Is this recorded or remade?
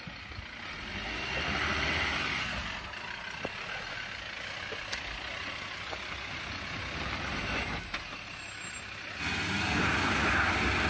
recorded